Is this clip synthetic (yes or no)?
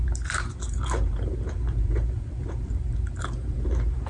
yes